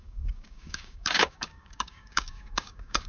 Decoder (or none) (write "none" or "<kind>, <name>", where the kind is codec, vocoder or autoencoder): codec, DAC